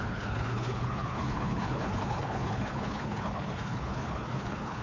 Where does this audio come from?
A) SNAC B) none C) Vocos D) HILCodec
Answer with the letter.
D